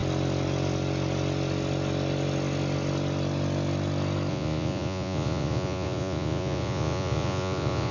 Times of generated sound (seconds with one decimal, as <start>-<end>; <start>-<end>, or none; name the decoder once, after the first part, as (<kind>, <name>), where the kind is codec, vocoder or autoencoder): 4.3-7.9 (vocoder, Vocos)